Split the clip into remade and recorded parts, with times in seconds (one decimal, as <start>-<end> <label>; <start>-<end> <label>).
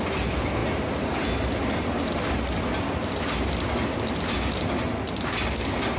0.0-6.0 recorded